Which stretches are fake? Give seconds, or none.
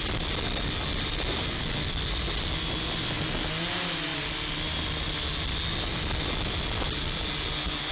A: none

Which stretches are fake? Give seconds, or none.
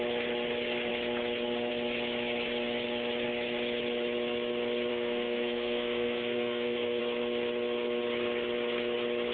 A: 4.9-7.0 (codec, SNAC)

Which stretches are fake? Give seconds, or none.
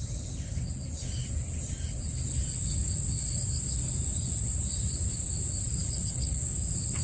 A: 5.8-6.4 (codec, HILCodec)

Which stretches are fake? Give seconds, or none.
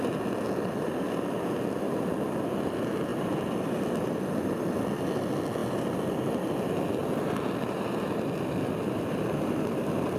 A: 3.1-4.1 (vocoder, BigVGAN v2); 5.6-6.1; 7.0-10.2